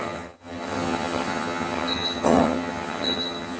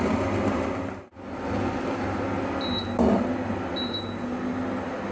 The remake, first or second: first